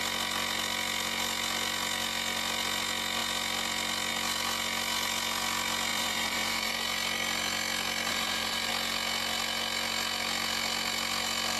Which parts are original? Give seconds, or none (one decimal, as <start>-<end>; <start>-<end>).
0.0-5.9; 6.7-8.1; 8.7-11.6